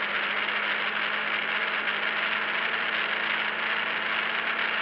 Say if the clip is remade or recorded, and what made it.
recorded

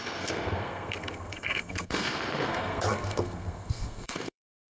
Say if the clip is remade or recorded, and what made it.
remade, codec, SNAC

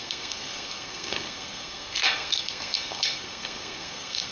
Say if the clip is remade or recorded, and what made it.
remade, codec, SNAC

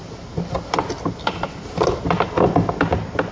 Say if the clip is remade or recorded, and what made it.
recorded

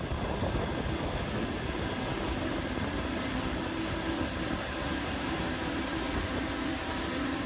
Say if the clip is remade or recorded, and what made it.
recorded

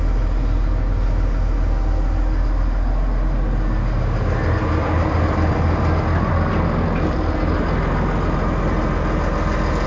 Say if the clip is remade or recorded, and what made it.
recorded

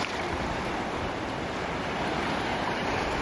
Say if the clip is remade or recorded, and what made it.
remade, vocoder, BigVGAN v2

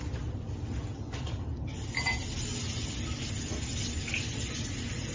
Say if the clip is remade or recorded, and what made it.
recorded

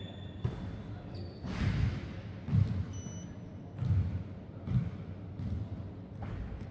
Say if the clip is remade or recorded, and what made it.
recorded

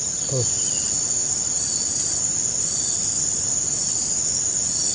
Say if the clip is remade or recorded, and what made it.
recorded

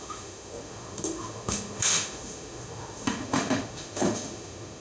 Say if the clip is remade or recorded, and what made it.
remade, autoencoder, DAC-VAE